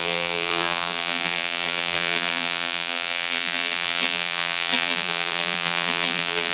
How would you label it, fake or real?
fake